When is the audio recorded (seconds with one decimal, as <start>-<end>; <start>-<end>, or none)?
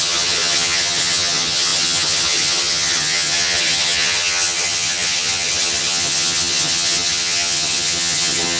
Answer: none